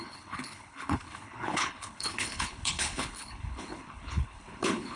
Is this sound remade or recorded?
remade